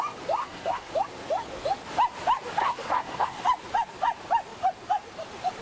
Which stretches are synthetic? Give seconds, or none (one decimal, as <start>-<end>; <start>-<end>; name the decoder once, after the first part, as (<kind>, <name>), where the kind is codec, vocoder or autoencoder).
0.4-0.9 (codec, SNAC); 2.6-3.4